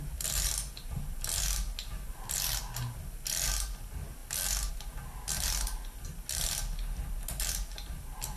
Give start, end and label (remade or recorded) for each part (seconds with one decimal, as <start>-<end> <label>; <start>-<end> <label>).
0.0-8.4 recorded

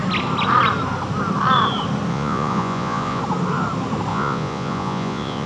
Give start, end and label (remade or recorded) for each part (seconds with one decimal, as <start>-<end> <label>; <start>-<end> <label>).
0.0-2.1 recorded; 2.1-3.2 remade; 3.2-4.1 recorded; 4.1-5.5 remade